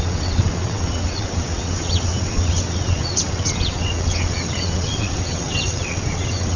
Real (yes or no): no